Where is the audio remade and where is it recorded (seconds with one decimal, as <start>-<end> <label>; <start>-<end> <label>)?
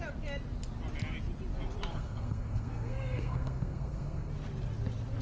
0.0-1.9 recorded; 1.9-4.3 remade; 4.3-5.2 recorded